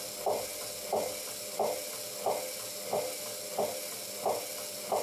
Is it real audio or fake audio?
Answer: real